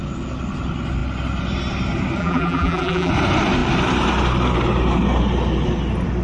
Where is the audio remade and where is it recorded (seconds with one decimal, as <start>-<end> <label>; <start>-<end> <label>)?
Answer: 0.0-2.2 recorded; 2.2-3.1 remade; 3.1-6.2 recorded